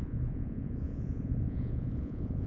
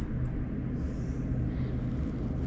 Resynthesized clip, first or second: first